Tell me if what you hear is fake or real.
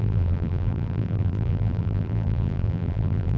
fake